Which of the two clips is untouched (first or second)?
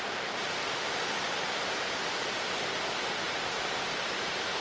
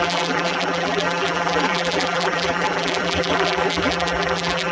first